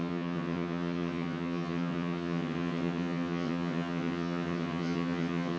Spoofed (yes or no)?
yes